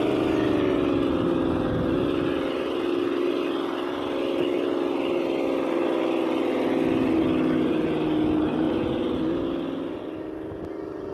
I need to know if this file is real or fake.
real